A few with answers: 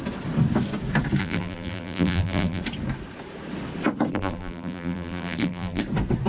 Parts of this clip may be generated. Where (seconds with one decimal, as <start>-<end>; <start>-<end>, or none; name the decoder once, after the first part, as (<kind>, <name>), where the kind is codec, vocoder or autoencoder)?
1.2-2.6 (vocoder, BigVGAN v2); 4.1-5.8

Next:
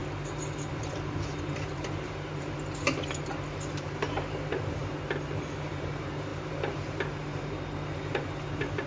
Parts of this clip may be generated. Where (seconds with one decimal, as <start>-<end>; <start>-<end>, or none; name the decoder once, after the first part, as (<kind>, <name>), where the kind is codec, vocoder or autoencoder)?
0.7-4.8 (vocoder, BigVGAN v2); 5.6-8.9

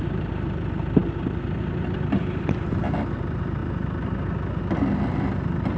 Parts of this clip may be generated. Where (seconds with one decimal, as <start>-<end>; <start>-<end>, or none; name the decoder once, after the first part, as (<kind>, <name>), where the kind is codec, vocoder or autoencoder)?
none